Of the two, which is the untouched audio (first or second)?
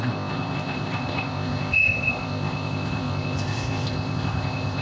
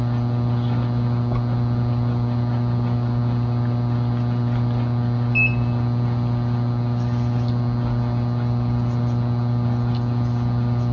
second